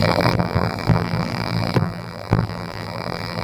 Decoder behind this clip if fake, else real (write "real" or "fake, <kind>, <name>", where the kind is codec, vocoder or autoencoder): fake, vocoder, BigVGAN v2